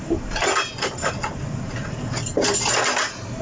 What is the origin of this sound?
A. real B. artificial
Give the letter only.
A